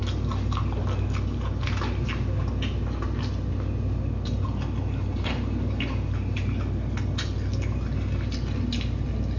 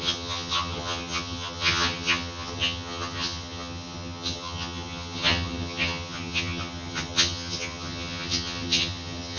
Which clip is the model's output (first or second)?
second